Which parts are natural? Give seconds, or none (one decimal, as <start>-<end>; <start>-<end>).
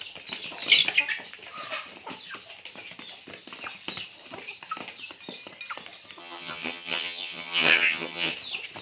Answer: 0.0-6.2; 8.3-8.8